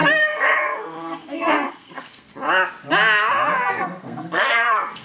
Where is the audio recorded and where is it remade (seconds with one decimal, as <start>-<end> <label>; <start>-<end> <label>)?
0.0-2.3 remade; 2.3-3.7 recorded; 3.7-5.0 remade